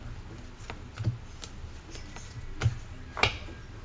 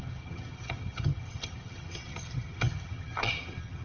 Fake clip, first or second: second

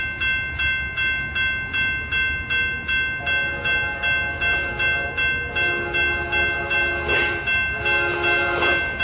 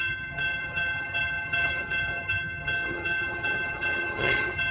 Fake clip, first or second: second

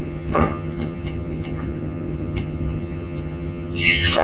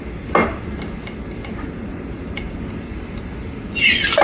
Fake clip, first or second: first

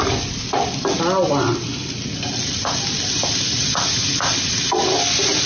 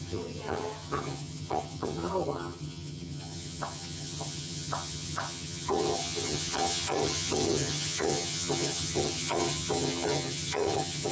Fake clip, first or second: second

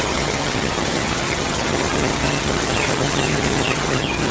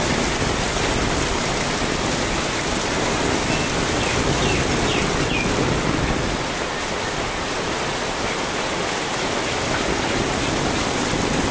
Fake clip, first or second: first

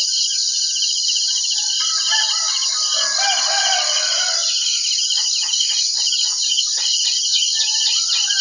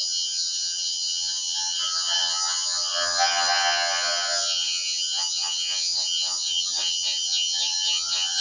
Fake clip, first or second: second